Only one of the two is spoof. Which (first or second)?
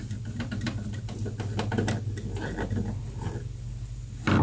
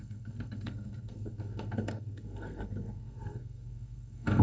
second